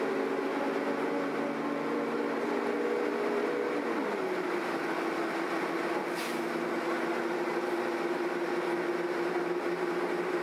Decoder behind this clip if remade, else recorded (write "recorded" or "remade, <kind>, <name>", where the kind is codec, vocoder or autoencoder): recorded